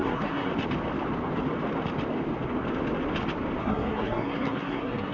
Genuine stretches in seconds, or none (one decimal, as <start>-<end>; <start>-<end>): 0.5-3.6